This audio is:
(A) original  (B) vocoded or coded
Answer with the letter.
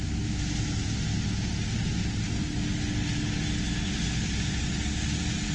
A